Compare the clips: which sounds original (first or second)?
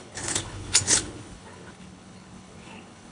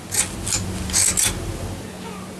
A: second